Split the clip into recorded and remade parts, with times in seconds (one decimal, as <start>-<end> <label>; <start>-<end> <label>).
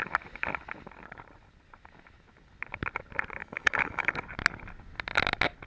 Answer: 0.0-3.4 recorded; 3.4-4.1 remade; 4.1-5.7 recorded